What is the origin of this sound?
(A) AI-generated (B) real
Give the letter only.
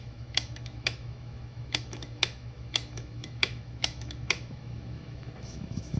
A